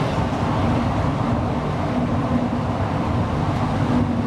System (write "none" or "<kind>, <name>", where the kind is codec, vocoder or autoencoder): none